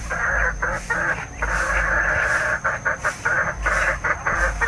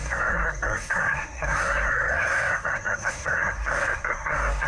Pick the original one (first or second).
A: first